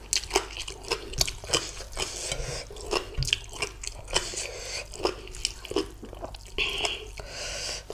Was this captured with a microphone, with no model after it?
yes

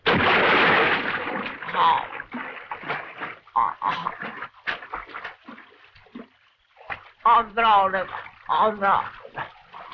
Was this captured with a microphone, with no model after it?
yes